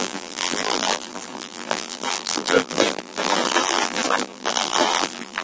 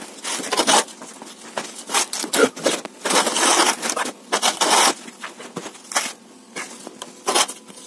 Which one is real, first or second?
second